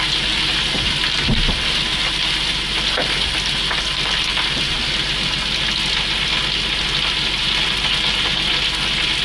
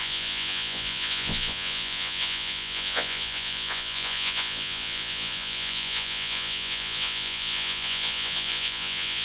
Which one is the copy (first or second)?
second